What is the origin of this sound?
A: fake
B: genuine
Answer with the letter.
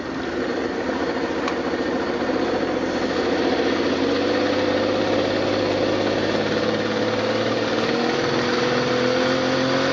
B